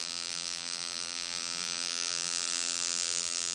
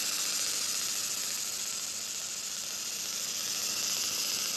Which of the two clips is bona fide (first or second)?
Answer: second